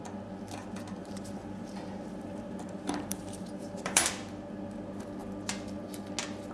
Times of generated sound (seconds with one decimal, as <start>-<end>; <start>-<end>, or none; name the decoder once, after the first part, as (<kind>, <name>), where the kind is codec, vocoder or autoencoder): 1.0-4.1 (vocoder, BigVGAN v2)